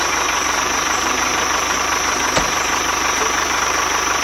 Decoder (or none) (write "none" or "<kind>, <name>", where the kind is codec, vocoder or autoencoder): vocoder, BigVGAN v2